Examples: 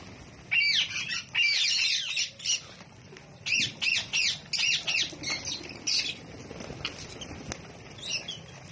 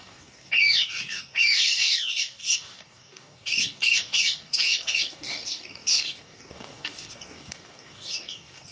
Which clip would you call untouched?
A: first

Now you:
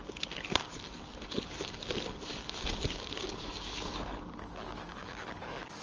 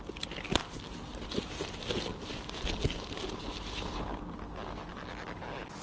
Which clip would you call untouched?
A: second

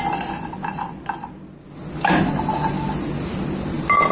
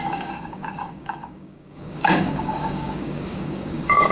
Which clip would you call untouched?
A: first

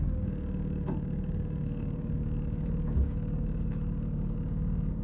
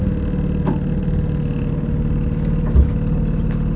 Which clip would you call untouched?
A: second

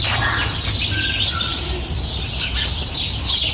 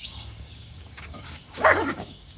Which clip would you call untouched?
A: first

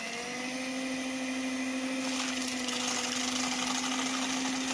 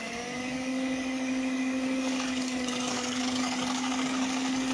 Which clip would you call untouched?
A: first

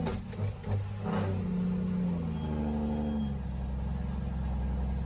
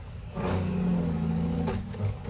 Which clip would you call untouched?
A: first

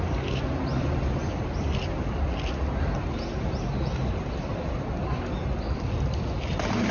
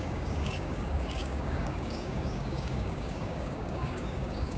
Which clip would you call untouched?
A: first